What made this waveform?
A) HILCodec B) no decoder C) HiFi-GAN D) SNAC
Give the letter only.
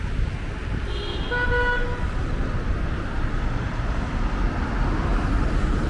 B